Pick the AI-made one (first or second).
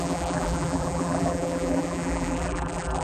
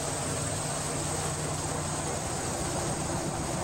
first